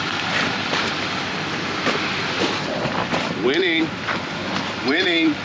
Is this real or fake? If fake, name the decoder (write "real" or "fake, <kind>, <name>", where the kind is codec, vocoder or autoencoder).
fake, vocoder, BigVGAN v2